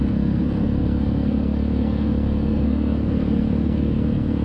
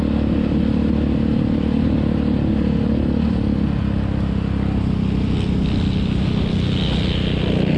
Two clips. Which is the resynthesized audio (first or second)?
first